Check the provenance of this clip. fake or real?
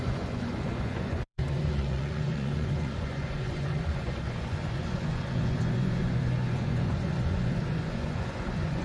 fake